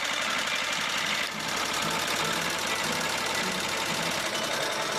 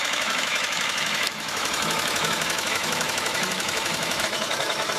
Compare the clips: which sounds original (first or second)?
first